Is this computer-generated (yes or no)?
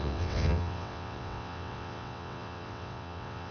yes